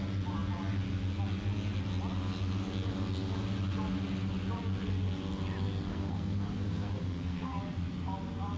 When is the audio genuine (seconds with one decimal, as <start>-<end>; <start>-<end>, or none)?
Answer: 0.0-5.9; 7.6-8.6